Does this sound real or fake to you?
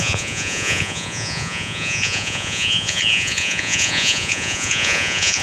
fake